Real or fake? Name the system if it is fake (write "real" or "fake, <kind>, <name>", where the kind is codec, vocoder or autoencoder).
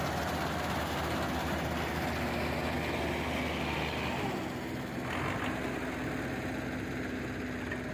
real